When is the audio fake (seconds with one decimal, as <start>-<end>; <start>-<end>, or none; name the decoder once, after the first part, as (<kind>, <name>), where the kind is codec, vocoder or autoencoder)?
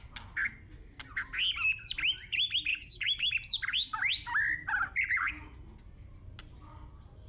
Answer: 2.7-3.3 (codec, DAC)